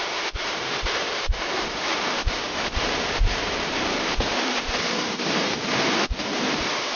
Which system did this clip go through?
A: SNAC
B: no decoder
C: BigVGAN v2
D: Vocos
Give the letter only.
C